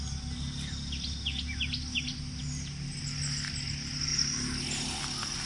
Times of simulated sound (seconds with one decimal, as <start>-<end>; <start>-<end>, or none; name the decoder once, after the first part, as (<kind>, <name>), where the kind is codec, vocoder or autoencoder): none